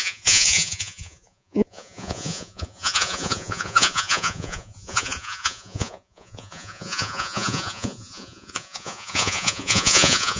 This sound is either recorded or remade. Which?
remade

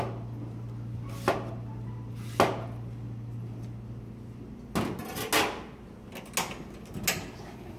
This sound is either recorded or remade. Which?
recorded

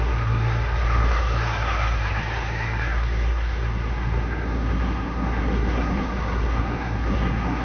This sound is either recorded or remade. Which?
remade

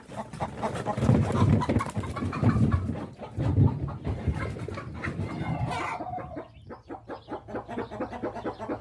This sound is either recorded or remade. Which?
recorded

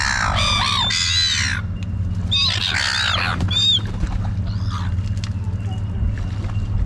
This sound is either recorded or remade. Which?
recorded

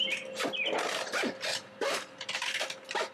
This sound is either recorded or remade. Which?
recorded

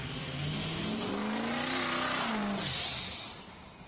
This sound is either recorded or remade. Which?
recorded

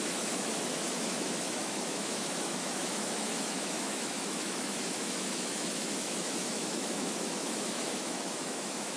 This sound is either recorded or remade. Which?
remade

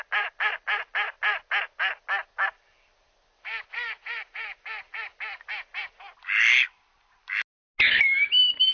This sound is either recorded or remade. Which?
recorded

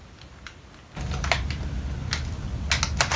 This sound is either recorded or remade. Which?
recorded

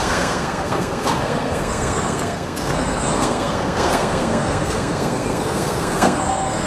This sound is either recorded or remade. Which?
remade